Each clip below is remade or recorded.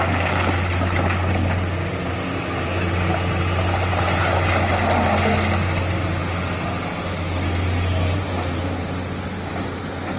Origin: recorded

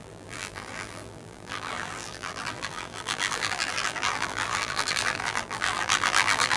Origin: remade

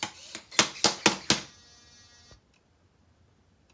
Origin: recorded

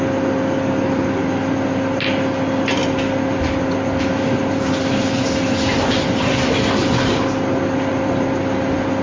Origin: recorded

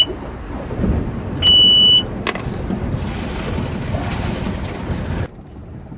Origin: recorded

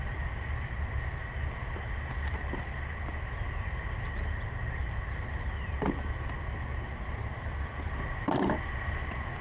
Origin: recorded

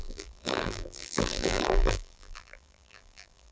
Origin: remade